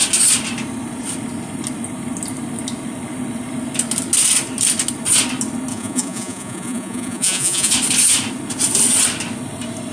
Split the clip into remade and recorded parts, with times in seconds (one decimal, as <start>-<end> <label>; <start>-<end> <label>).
0.0-5.7 recorded; 5.7-7.7 remade; 7.7-9.9 recorded